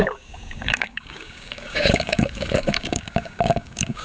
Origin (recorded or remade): remade